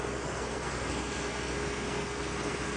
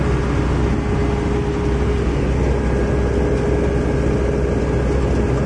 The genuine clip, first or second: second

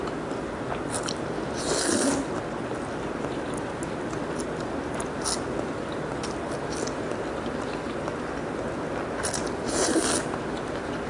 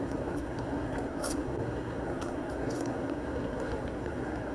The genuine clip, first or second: first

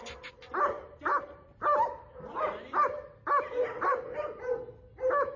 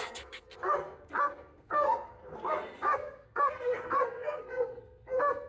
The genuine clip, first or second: first